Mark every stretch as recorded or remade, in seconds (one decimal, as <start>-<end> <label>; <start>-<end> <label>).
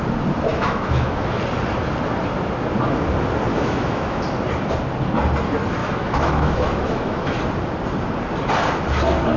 0.0-0.5 recorded; 0.5-1.4 remade; 1.4-3.5 recorded; 3.5-4.2 remade; 4.2-5.8 recorded; 5.8-7.4 remade; 7.4-9.4 recorded